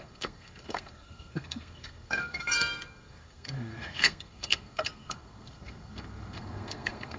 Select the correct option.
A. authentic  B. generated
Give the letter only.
B